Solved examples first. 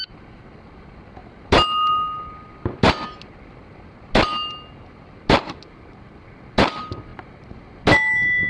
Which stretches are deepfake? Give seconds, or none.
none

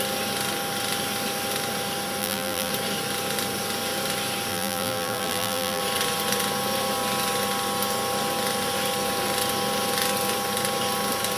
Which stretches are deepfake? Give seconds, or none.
2.2-2.7 (vocoder, BigVGAN v2); 4.5-5.8

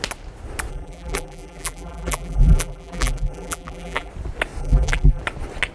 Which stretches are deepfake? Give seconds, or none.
0.7-4.1 (vocoder, BigVGAN v2); 4.6-5.2

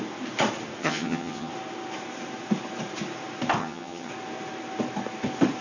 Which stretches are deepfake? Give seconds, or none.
0.8-1.5 (vocoder, HiFi-GAN); 3.6-4.1

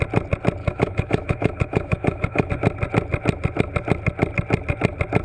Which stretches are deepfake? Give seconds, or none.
0.6-2.5 (autoencoder, DAC-VAE)

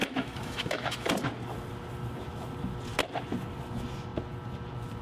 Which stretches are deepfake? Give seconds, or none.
0.0-1.1 (autoencoder, DAC-VAE)

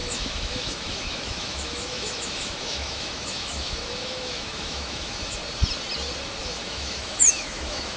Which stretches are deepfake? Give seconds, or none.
0.0-5.4 (autoencoder, DAC-VAE); 6.4-8.0

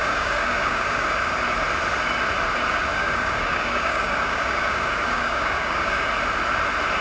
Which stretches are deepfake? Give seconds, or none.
0.0-1.3 (codec, DAC); 2.9-6.1